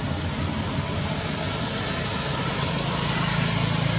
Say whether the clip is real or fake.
real